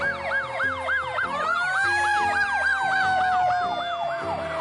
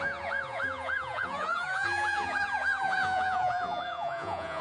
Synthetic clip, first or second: second